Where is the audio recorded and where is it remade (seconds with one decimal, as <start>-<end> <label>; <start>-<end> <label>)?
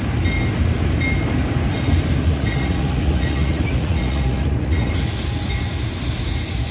0.0-2.2 recorded; 2.2-4.9 remade; 4.9-6.7 recorded